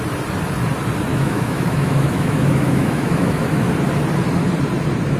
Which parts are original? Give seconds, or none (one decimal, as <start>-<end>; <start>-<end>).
0.0-1.1; 3.7-5.2